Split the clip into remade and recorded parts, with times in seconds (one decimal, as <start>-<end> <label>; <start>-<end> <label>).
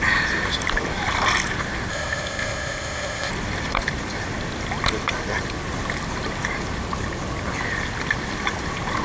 0.0-1.9 recorded; 1.9-3.3 remade; 3.3-9.0 recorded